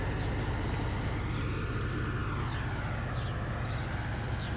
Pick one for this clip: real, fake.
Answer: real